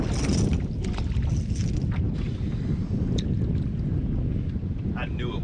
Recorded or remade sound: recorded